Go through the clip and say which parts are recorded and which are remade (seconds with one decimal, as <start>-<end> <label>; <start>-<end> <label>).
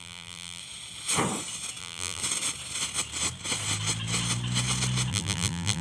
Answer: 0.0-0.6 remade; 0.6-1.8 recorded; 1.8-2.2 remade; 2.2-5.1 recorded; 5.1-5.8 remade